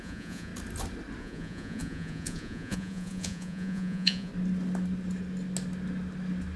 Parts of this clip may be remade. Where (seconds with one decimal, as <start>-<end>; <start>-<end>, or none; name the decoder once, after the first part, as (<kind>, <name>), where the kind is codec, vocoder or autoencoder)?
0.0-0.5 (vocoder, Vocos); 1.2-4.3